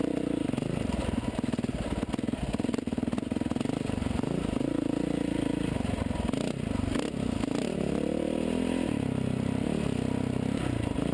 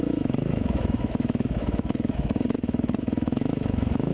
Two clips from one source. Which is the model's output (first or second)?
second